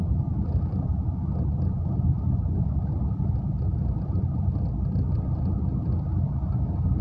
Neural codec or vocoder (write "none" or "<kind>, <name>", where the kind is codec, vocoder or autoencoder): none